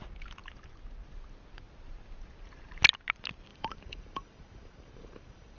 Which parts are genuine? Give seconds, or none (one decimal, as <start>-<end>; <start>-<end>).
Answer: 0.0-3.5